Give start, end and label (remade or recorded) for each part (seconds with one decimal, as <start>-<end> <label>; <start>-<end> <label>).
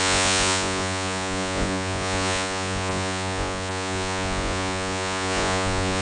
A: 0.0-6.0 remade